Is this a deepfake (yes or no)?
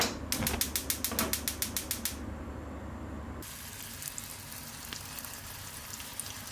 no